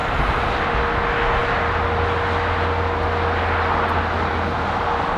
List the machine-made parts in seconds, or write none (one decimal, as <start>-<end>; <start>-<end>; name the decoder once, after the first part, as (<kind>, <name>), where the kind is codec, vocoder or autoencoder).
0.0-0.6 (vocoder, BigVGAN v2)